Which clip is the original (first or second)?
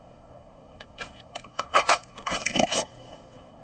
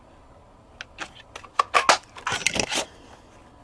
second